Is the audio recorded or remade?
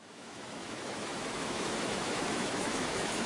remade